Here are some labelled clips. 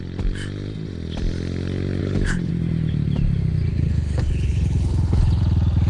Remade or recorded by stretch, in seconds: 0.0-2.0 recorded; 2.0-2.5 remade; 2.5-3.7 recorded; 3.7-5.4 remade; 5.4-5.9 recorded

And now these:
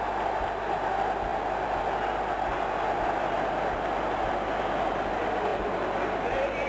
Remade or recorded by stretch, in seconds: 0.0-6.7 recorded